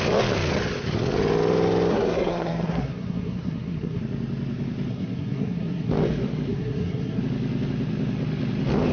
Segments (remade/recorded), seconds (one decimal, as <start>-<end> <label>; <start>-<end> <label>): 0.0-1.9 recorded; 1.9-4.0 remade; 4.0-4.9 recorded; 4.9-5.9 remade; 5.9-6.5 recorded; 6.5-7.2 remade; 7.2-8.9 recorded